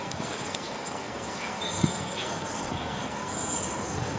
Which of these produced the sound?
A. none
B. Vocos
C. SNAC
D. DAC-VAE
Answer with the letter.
C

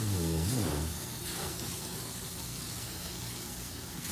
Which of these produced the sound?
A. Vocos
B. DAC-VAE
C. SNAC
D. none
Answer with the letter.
C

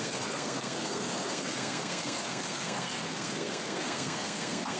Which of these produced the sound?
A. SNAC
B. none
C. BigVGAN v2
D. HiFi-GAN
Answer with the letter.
A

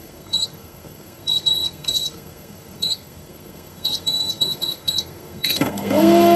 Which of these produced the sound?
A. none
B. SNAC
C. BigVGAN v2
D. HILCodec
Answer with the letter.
B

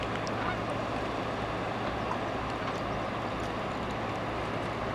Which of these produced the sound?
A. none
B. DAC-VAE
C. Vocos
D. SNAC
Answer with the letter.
A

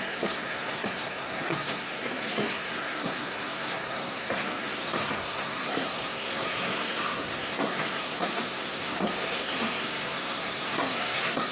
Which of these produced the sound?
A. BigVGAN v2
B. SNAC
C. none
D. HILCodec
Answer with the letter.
B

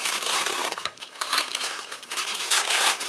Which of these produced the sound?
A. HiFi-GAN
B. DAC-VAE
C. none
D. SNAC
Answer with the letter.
D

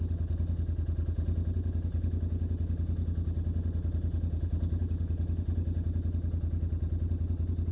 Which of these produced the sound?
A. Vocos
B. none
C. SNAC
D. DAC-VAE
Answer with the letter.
B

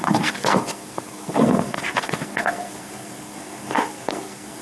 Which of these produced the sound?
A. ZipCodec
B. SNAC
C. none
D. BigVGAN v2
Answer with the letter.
B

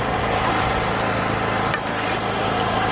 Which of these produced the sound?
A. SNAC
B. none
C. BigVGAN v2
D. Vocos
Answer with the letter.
B